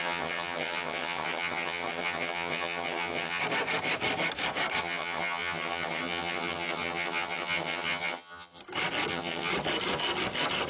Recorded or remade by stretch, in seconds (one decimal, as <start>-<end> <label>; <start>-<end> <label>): 0.0-3.4 remade; 3.4-4.8 recorded; 4.8-8.6 remade; 8.6-9.1 recorded; 9.1-9.5 remade; 9.5-10.7 recorded